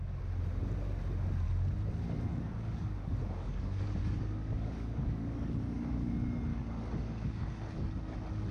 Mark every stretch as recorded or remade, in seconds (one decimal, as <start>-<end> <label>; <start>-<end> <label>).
0.0-2.3 recorded; 2.3-6.1 remade; 6.1-6.5 recorded; 6.5-7.9 remade; 7.9-8.5 recorded